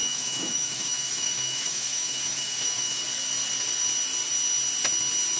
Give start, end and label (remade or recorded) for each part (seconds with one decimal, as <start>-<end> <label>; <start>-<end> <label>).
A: 0.0-3.0 remade; 3.0-5.4 recorded